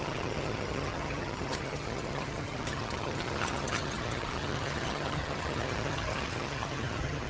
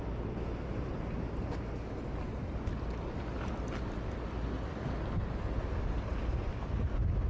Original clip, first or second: second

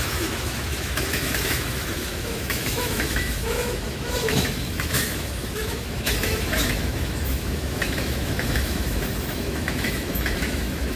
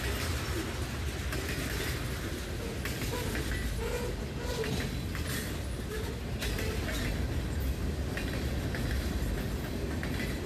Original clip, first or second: second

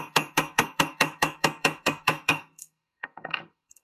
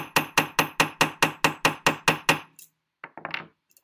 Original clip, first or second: second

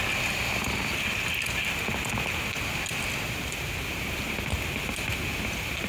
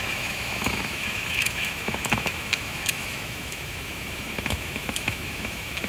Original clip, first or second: first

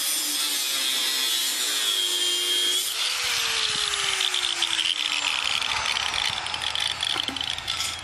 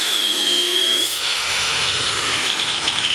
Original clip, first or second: first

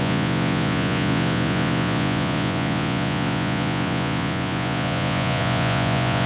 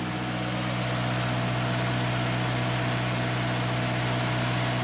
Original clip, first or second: second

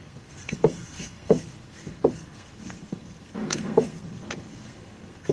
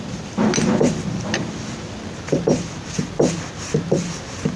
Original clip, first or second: second